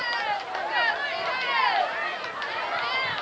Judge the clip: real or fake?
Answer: real